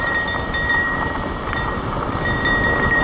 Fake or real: fake